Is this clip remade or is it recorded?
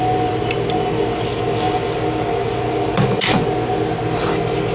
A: recorded